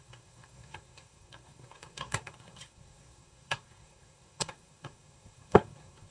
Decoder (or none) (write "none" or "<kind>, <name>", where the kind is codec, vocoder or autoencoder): codec, SNAC